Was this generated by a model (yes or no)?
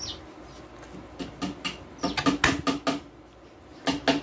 no